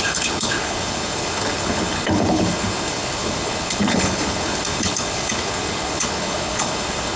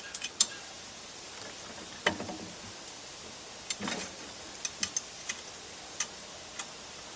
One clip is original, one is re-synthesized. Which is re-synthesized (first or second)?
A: first